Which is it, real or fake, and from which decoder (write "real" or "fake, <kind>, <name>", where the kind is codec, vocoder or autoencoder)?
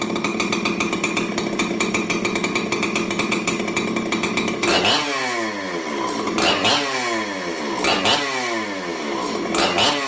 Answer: real